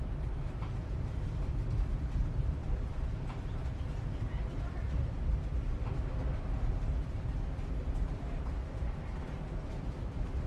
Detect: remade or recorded remade